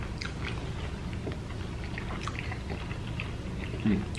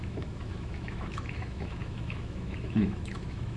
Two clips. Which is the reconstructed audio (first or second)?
second